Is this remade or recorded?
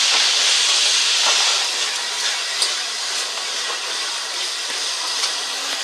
recorded